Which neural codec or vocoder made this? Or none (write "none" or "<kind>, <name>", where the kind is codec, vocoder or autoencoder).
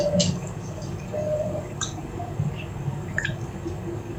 codec, DAC